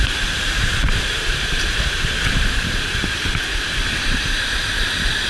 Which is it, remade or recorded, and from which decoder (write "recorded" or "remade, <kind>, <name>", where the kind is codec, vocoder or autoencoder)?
remade, vocoder, BigVGAN v2